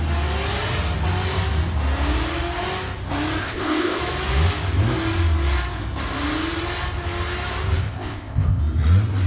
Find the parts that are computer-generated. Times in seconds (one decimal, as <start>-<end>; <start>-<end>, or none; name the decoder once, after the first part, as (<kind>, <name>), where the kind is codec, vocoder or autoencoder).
3.4-4.0 (codec, ZipCodec); 7.8-8.6